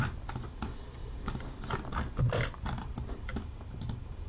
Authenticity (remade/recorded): remade